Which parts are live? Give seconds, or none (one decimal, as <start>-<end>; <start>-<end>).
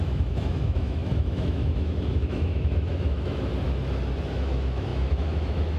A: 3.5-4.2